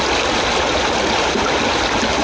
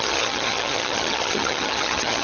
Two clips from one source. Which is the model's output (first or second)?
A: second